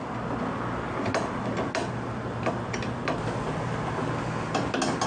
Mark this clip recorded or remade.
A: recorded